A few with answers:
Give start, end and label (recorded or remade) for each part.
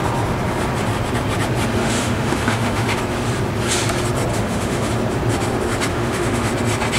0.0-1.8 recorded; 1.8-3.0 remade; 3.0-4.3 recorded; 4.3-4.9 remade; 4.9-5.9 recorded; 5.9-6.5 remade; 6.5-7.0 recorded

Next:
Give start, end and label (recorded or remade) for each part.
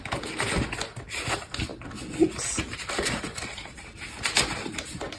0.0-5.2 recorded